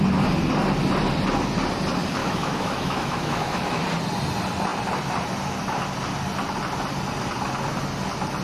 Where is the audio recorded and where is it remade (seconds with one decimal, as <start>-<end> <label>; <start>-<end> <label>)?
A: 0.0-2.2 recorded; 2.2-3.8 remade; 3.8-8.4 recorded